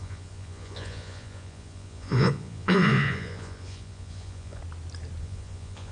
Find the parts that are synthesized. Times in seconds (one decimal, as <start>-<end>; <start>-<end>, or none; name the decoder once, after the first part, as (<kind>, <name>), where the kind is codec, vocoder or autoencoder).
0.0-4.6 (vocoder, Vocos); 5.2-5.9